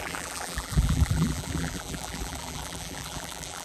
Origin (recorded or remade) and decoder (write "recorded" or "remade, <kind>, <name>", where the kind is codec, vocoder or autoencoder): remade, vocoder, BigVGAN v2